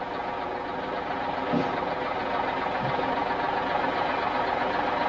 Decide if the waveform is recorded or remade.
recorded